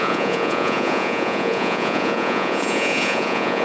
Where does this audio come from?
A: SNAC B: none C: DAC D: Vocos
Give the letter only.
D